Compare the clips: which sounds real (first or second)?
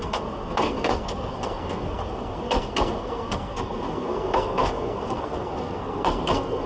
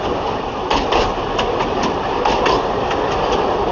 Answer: second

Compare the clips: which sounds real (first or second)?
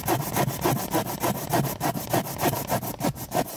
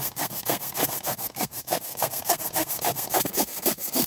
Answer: first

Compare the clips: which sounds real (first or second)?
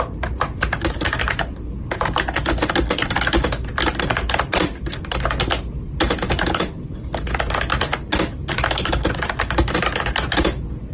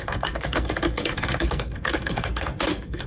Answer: first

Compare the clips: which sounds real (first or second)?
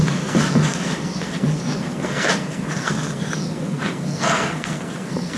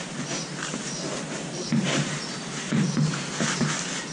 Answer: second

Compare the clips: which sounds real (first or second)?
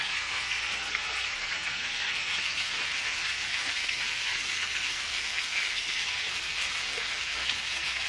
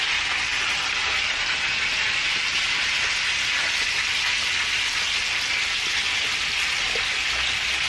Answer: second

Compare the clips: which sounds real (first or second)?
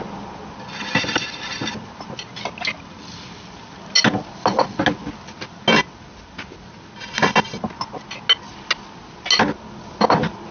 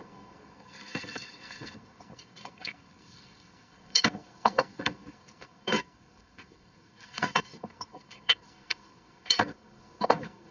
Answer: first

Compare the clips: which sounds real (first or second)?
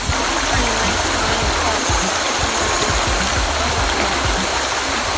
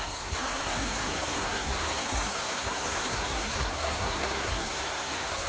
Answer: first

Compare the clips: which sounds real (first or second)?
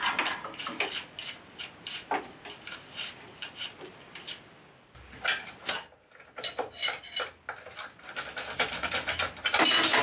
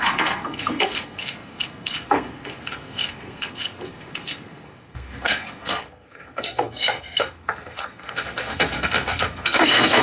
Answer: first